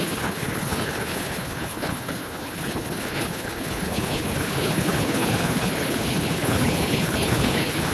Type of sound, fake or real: fake